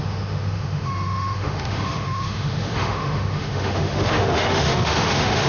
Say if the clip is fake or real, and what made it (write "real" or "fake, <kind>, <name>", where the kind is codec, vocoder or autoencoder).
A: fake, autoencoder, DAC-VAE